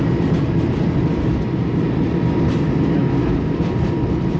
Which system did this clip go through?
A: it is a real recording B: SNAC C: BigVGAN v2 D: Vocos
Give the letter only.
A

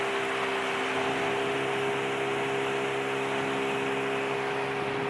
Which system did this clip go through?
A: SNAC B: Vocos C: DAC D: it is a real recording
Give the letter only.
D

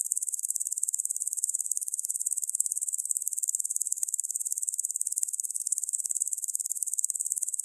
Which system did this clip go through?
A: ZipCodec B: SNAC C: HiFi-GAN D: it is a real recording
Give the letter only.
B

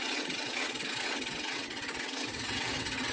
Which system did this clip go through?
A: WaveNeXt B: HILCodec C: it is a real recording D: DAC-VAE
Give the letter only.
A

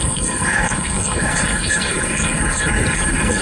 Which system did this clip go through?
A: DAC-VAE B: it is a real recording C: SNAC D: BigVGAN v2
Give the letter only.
C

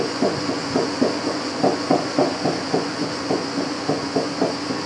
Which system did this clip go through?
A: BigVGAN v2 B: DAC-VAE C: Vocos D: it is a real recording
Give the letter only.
C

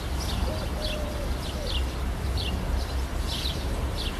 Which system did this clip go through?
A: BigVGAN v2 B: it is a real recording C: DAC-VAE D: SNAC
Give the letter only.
B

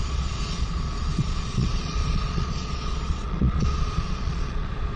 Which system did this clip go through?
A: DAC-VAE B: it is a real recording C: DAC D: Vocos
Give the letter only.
D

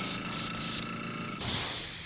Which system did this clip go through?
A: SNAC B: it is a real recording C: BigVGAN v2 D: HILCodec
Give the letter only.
B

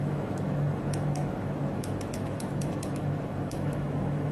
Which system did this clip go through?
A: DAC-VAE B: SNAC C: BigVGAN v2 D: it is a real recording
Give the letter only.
A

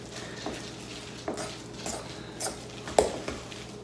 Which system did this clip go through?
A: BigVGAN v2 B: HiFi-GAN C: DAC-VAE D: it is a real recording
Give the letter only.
D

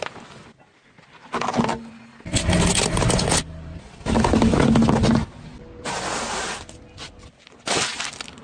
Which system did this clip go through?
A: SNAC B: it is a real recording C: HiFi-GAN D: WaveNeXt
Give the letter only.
B